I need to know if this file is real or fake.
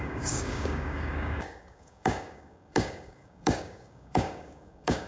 fake